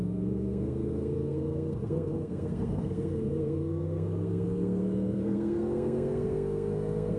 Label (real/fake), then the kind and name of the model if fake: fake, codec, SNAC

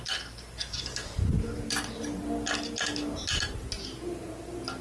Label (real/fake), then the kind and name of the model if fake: real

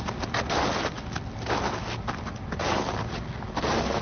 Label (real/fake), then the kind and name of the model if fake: real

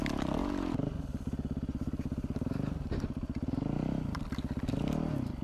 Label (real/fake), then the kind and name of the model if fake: real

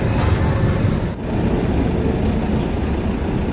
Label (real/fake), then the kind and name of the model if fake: real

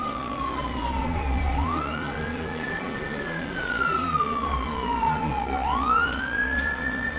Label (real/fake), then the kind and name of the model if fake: fake, vocoder, Vocos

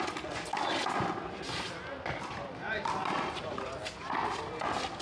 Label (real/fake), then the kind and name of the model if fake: real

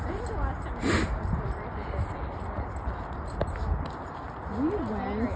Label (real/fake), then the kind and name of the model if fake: real